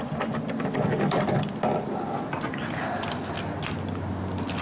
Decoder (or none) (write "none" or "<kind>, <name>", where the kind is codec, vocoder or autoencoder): none